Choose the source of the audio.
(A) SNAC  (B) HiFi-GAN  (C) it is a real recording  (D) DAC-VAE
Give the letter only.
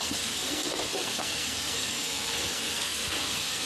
A